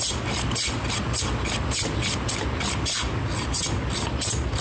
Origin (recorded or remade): recorded